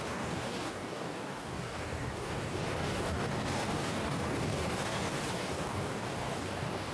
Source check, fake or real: fake